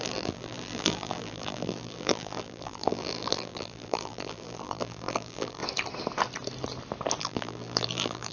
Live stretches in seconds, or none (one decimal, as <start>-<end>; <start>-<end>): 5.6-7.2